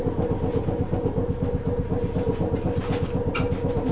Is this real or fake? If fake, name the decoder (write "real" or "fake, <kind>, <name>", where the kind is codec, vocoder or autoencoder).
real